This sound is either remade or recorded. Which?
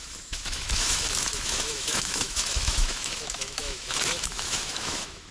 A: remade